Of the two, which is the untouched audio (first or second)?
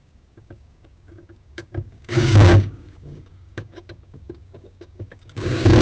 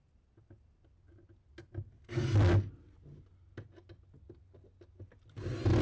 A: second